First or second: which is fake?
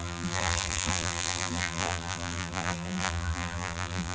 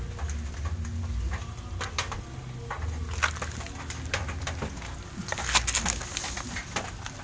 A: first